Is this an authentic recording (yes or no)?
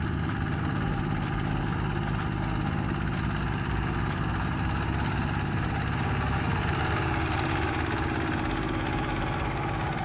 yes